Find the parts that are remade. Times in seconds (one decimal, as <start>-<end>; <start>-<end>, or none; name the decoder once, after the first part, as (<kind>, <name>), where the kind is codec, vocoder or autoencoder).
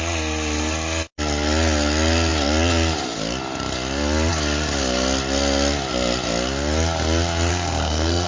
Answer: 7.5-8.3 (codec, SNAC)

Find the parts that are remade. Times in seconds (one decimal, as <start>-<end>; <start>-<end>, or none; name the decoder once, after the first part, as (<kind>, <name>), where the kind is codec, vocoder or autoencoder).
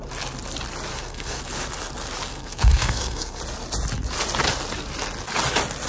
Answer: 0.9-1.4 (codec, SNAC); 2.3-3.4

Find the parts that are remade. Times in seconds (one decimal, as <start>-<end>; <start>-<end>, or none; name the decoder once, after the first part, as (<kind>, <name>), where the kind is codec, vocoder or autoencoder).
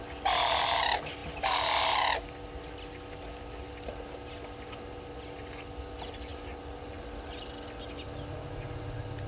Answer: none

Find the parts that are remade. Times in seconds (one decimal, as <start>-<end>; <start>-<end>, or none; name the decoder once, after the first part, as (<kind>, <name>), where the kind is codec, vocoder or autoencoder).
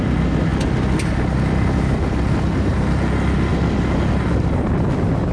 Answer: none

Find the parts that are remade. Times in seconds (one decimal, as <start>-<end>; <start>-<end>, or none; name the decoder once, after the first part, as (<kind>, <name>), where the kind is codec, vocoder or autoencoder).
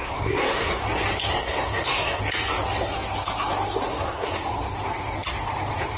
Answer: 0.0-0.8 (codec, SNAC); 1.3-2.2; 3.9-4.5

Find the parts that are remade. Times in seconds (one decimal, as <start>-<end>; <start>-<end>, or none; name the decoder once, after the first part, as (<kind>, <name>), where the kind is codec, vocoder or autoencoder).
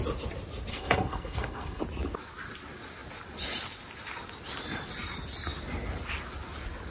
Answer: 0.7-1.8 (codec, SNAC)